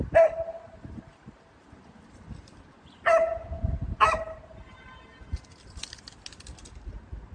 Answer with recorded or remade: recorded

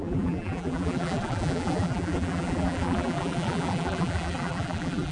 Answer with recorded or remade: remade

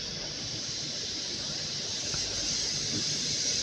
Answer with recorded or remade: remade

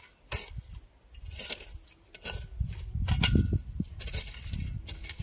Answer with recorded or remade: recorded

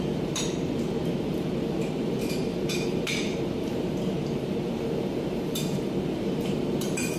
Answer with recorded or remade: remade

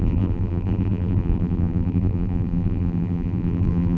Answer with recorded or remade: remade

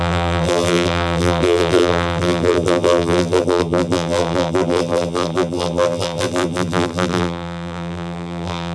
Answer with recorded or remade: remade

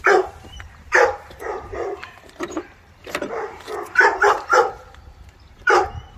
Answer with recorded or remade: remade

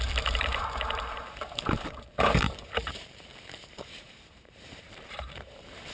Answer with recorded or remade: remade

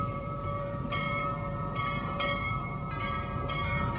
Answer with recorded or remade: remade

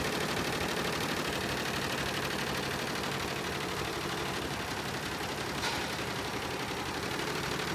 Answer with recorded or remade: remade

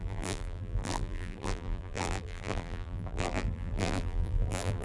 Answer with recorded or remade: remade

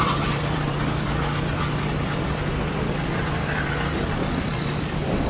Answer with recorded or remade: remade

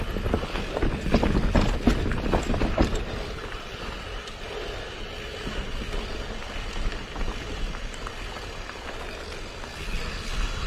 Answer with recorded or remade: recorded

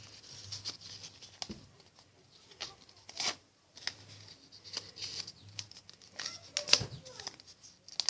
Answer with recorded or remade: recorded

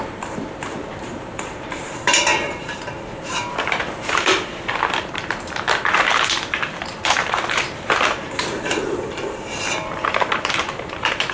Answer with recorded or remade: remade